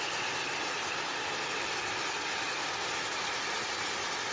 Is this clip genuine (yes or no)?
yes